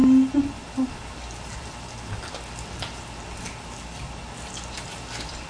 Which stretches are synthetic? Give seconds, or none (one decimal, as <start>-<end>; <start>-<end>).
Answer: none